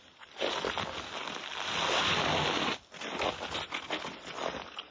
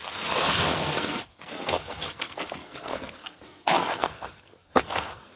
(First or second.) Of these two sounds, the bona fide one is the first